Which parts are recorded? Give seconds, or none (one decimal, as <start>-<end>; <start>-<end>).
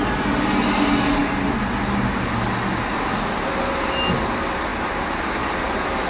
0.0-6.1